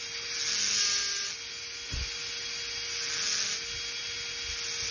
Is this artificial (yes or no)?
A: no